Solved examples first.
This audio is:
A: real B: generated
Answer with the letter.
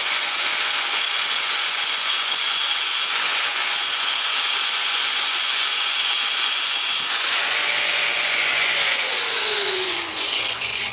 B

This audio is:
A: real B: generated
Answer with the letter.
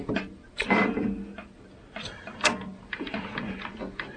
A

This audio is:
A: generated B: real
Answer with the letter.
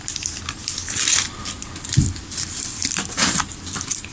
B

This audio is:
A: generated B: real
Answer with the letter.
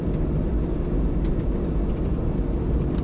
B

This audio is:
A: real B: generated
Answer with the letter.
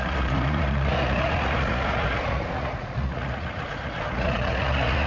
B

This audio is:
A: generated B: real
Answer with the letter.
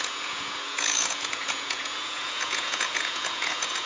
A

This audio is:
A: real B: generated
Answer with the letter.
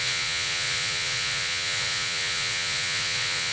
B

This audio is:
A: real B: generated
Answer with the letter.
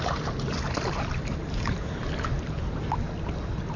A